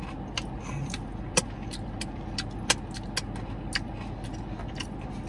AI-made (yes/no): no